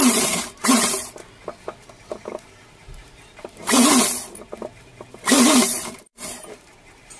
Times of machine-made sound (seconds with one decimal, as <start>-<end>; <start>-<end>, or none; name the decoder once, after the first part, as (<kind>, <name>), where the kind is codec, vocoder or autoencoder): 0.0-0.4 (vocoder, BigVGAN v2); 2.9-3.9; 4.5-4.9; 5.7-7.2